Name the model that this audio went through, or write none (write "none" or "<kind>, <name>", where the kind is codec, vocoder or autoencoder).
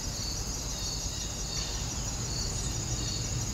none